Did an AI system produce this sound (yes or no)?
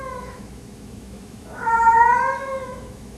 yes